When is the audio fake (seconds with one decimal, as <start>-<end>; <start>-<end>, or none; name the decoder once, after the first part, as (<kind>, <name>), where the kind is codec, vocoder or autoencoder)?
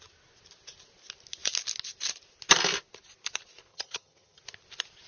3.7-4.4 (vocoder, HiFi-GAN)